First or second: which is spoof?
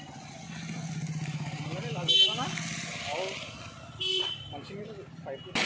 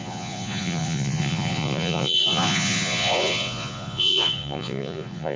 second